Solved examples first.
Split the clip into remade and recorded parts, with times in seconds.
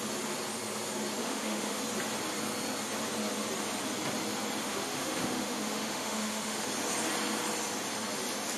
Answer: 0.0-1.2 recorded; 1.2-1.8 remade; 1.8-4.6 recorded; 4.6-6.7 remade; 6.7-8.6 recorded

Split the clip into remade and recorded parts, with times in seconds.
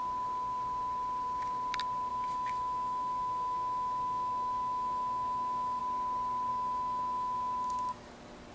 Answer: 0.0-2.1 recorded; 2.1-5.8 remade; 5.8-6.5 recorded; 6.5-8.1 remade; 8.1-8.5 recorded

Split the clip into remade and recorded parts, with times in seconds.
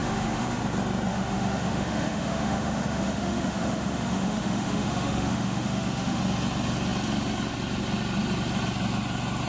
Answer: 0.0-0.6 remade; 0.6-1.1 recorded; 1.1-6.2 remade; 6.2-9.5 recorded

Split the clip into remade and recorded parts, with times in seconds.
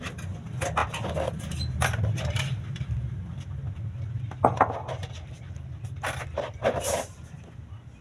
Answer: 0.0-8.0 recorded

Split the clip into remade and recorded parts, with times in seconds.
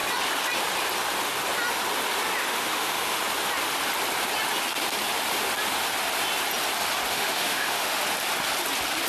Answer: 0.0-2.4 recorded; 2.4-3.2 remade; 3.2-7.1 recorded; 7.1-8.0 remade; 8.0-9.1 recorded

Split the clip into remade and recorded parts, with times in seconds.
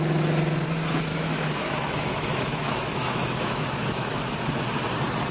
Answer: 0.0-1.1 recorded; 1.1-4.3 remade; 4.3-5.3 recorded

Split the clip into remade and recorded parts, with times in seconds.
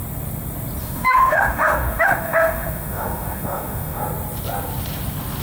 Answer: 0.0-0.8 recorded; 0.8-4.0 remade; 4.0-5.4 recorded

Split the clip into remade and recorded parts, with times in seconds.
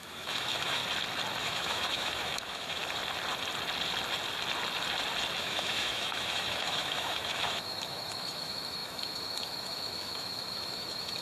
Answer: 0.0-0.8 remade; 0.8-1.4 recorded; 1.4-2.8 remade; 2.8-5.4 recorded; 5.4-11.2 remade